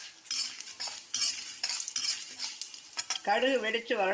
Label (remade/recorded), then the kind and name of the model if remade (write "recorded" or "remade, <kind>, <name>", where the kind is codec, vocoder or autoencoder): recorded